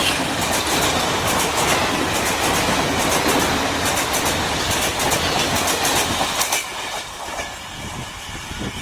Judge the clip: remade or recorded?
recorded